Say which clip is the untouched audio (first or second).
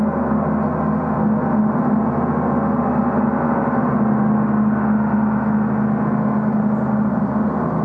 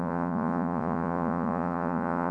first